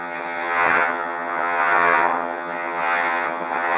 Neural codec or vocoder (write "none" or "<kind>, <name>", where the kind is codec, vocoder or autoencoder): vocoder, HiFi-GAN